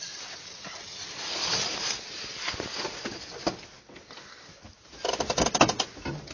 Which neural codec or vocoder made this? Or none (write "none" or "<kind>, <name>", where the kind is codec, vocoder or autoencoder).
none